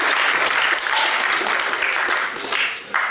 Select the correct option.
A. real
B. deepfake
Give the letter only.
A